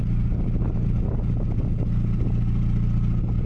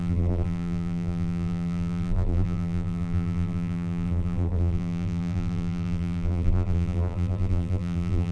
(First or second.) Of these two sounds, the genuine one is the first